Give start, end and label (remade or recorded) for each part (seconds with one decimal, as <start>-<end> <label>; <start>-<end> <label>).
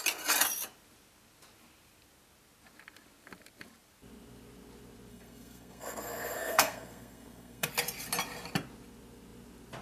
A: 0.0-5.1 recorded; 5.1-7.7 remade; 7.7-9.8 recorded